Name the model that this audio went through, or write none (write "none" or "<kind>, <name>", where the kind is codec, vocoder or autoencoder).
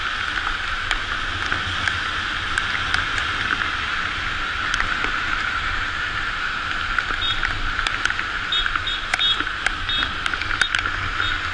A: none